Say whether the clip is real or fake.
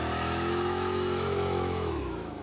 fake